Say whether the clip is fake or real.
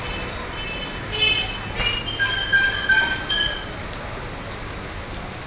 real